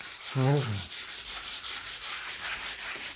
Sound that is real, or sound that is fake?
fake